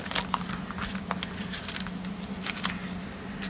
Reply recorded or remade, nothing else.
recorded